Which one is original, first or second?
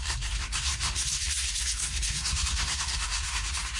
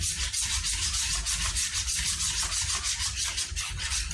second